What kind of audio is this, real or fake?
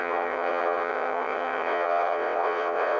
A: fake